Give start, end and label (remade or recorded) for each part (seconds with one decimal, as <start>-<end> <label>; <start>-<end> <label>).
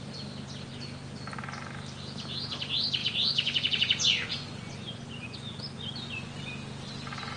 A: 0.0-3.0 recorded; 3.0-6.4 remade; 6.4-7.4 recorded